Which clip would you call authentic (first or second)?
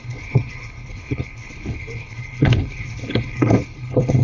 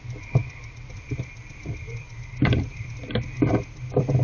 second